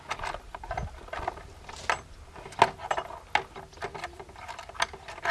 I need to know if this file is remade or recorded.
recorded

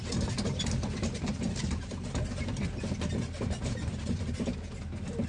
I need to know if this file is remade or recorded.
recorded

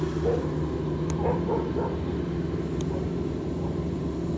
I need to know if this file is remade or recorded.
recorded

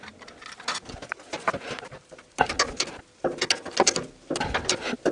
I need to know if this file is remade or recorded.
recorded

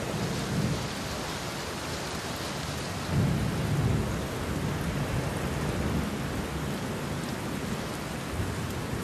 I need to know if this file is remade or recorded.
recorded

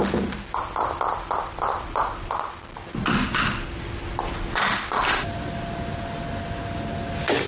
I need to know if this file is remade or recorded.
recorded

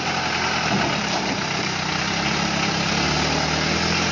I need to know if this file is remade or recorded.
recorded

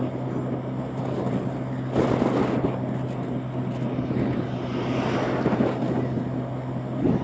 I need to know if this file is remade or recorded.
recorded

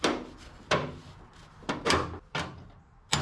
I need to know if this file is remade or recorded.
recorded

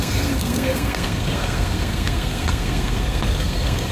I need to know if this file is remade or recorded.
remade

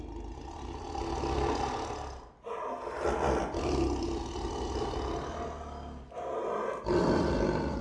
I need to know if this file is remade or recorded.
recorded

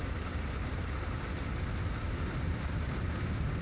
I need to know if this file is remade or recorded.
recorded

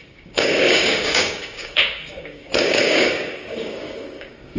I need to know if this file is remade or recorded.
remade